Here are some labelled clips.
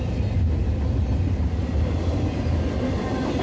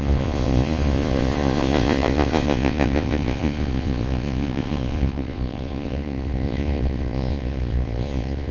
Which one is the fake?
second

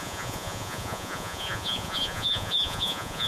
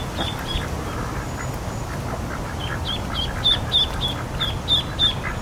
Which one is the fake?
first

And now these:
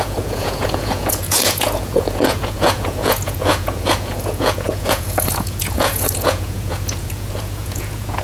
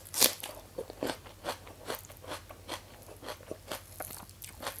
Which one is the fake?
first